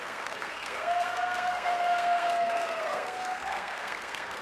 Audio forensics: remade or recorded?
remade